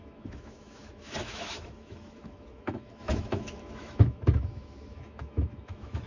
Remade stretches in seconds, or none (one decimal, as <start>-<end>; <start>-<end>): 0.0-6.1